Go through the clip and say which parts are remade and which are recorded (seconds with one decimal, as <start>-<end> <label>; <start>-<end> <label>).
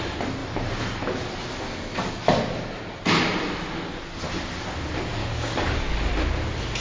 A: 0.0-5.2 recorded; 5.2-6.1 remade; 6.1-6.8 recorded